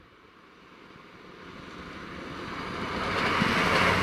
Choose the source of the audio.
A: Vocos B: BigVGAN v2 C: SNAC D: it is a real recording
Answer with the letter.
D